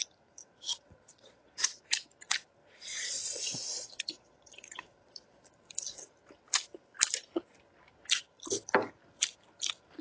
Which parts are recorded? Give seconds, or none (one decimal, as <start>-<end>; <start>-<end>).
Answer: 0.0-0.4; 1.8-2.6; 5.5-10.0